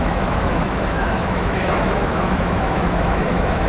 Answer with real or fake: fake